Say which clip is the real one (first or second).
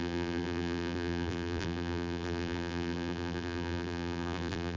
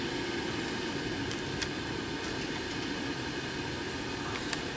second